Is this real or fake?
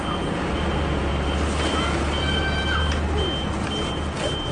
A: real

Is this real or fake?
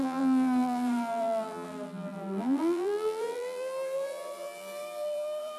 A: fake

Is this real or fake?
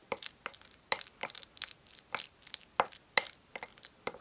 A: real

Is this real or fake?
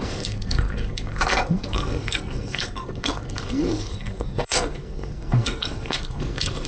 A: fake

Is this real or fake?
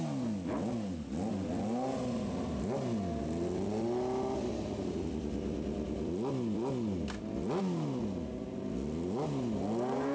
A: real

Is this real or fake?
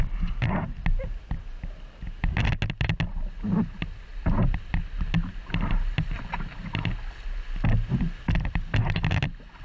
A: real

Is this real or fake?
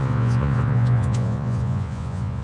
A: fake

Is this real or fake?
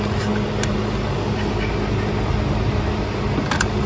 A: real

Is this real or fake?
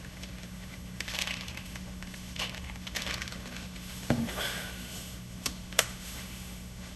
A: fake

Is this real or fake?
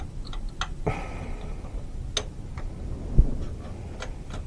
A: real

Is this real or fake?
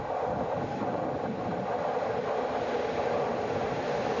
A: fake